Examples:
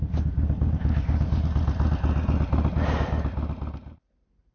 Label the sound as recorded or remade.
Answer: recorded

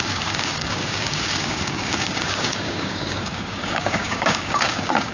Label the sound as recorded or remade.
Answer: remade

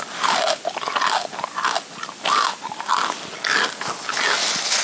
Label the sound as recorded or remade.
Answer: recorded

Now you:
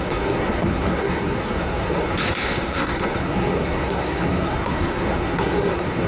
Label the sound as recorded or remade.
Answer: remade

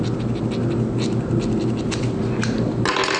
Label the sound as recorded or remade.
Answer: recorded